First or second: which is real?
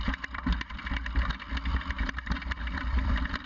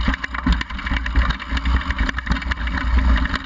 second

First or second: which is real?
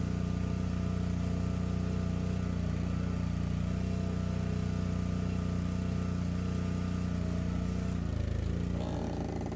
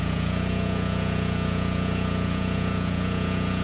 first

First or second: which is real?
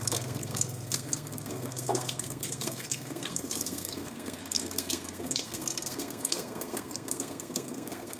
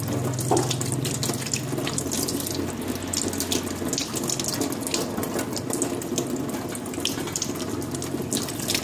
second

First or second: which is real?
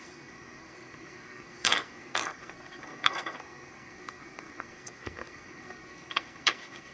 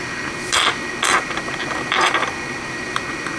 second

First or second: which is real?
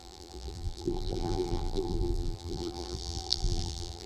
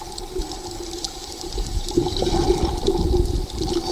second